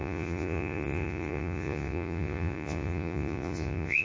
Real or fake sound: fake